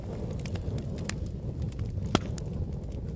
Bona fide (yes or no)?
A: yes